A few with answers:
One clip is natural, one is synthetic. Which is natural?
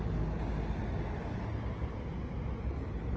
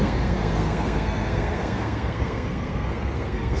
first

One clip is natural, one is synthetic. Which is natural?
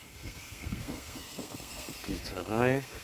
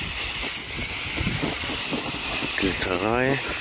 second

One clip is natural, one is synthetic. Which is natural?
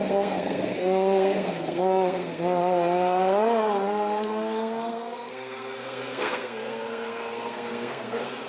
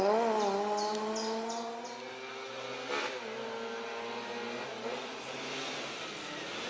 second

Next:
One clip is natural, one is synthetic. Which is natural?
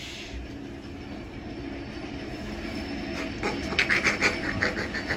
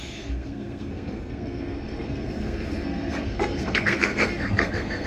first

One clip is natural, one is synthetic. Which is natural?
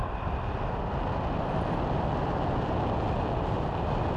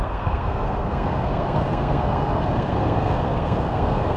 first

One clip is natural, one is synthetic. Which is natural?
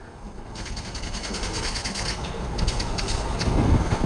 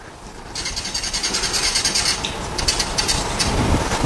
second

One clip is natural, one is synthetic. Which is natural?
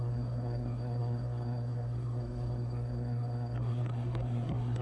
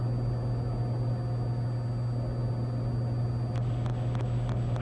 second